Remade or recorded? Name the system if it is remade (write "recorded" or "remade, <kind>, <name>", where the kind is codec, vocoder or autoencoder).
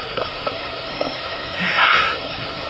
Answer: remade, codec, SNAC